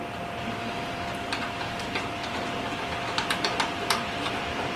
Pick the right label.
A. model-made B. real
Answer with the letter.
B